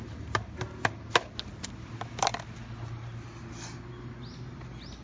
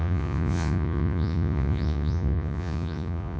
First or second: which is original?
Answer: first